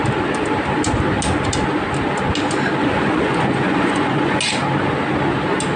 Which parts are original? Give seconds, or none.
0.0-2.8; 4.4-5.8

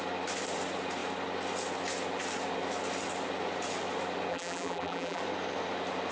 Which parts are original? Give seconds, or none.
0.0-4.3; 5.2-6.1

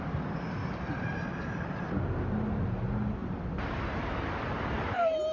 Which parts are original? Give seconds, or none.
0.0-5.3